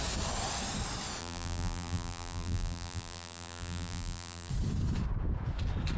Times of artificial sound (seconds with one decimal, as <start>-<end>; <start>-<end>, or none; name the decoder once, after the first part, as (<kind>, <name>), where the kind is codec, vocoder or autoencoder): 1.2-4.5 (vocoder, BigVGAN v2)